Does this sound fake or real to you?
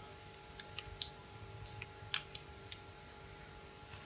real